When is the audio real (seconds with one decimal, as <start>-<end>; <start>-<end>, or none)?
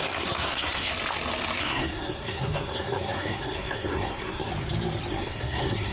0.9-1.6; 4.5-5.1